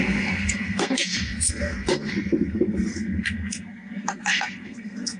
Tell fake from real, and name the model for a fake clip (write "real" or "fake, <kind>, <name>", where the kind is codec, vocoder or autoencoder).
fake, codec, SNAC